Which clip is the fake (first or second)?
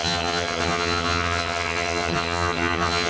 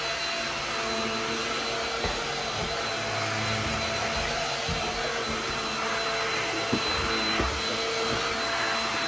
first